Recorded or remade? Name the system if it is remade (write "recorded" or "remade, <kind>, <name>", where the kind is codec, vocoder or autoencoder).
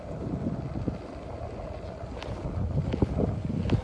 recorded